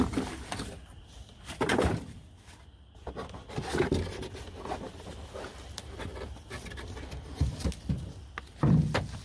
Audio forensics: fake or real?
real